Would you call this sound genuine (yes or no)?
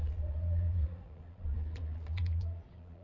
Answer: no